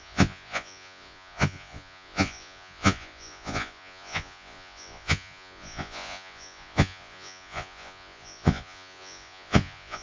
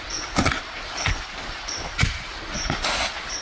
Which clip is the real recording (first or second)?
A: second